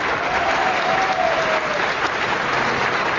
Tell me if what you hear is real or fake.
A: real